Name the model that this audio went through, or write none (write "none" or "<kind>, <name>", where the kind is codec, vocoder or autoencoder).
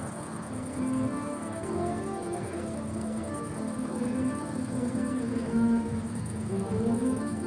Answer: codec, SNAC